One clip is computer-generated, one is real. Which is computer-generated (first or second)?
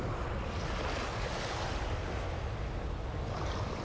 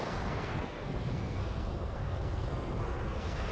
second